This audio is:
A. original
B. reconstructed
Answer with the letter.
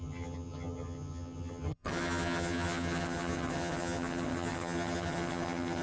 B